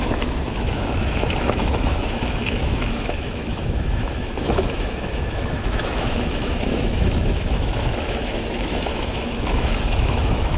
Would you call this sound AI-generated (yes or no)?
yes